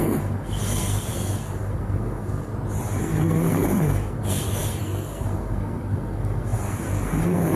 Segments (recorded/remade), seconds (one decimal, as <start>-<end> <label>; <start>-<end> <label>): 0.0-2.5 remade; 2.5-3.0 recorded; 3.0-7.6 remade